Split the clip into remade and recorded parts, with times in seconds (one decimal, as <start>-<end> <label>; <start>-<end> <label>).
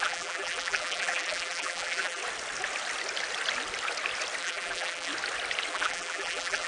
0.0-2.2 remade; 2.2-4.4 recorded; 4.4-5.1 remade; 5.1-5.7 recorded; 5.7-6.7 remade